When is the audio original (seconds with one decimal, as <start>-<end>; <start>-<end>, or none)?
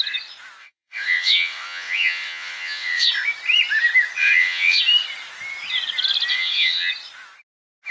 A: 0.0-0.6; 3.1-4.2; 4.8-6.3; 6.9-7.9